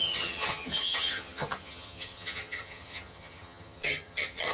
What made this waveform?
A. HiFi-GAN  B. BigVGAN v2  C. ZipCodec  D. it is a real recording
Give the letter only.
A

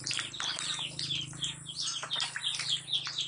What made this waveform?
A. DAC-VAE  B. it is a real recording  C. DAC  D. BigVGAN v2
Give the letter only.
B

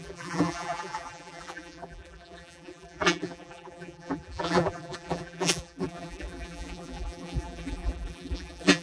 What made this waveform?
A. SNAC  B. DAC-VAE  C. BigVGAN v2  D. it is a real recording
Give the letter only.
C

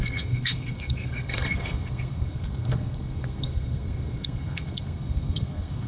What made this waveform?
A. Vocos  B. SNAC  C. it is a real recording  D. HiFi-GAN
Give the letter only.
B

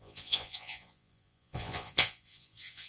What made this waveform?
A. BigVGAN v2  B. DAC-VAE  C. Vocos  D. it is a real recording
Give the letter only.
C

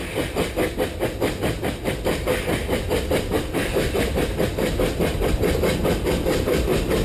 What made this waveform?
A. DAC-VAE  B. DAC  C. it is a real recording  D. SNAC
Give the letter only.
C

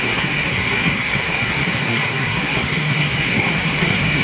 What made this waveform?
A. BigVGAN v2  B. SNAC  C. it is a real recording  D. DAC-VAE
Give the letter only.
B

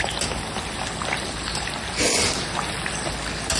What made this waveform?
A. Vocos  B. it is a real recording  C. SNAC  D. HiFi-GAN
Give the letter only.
B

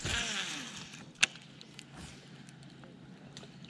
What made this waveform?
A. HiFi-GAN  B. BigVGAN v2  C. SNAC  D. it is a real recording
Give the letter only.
D